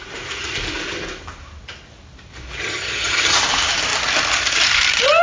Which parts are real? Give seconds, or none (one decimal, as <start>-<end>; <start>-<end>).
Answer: 0.0-2.6; 3.4-5.2